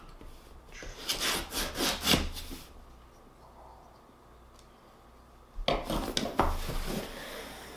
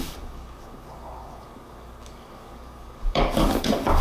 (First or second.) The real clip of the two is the first